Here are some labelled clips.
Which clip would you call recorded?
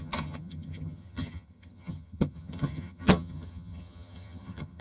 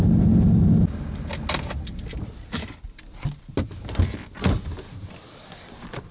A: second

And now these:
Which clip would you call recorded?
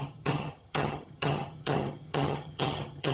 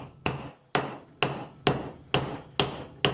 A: second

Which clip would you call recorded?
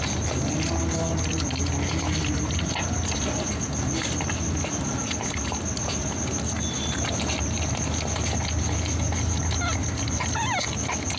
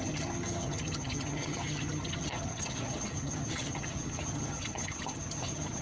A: first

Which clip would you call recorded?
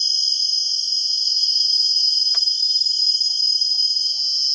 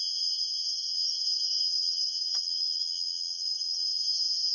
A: first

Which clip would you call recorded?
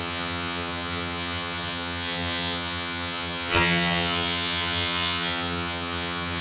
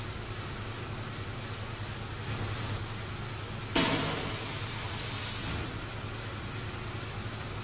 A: second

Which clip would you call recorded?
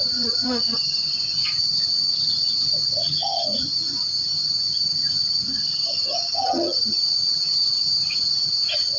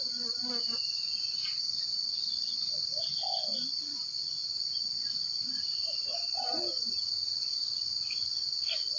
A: second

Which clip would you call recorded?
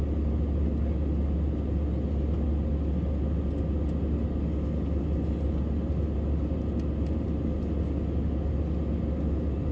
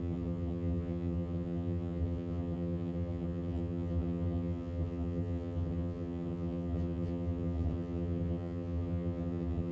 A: first